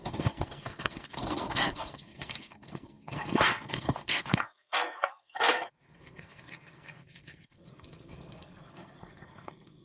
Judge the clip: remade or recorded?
remade